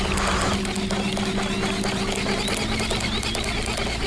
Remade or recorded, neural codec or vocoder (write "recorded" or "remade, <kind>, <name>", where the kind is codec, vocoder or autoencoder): recorded